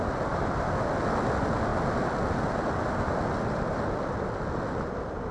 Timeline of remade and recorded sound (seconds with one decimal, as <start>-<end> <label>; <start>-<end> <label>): 0.0-5.3 recorded